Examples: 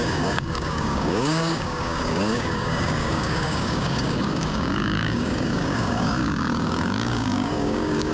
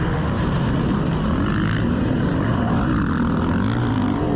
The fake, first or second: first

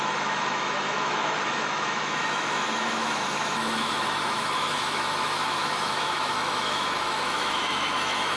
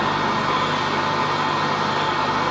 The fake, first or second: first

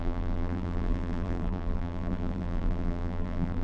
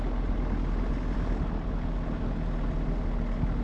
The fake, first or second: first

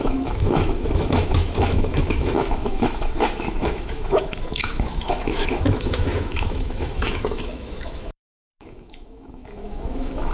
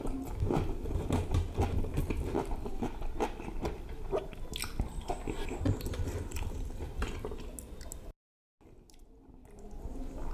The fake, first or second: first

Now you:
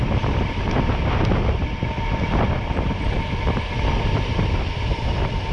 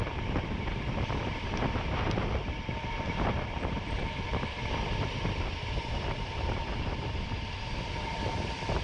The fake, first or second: second